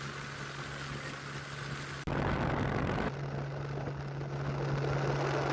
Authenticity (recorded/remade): recorded